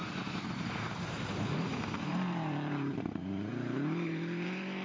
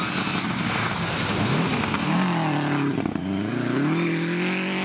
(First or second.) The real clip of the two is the second